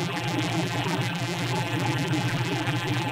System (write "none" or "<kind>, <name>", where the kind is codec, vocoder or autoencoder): vocoder, BigVGAN v2